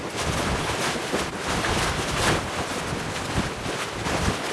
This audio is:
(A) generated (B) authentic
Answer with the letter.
B